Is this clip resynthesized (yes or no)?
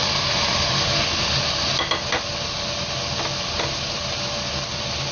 no